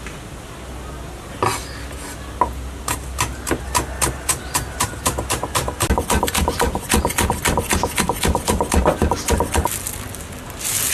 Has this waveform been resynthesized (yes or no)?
no